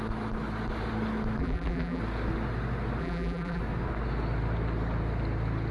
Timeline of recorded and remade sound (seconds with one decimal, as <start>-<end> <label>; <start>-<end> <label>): 0.0-1.4 recorded; 1.4-2.0 remade; 2.0-3.0 recorded; 3.0-3.6 remade; 3.6-5.7 recorded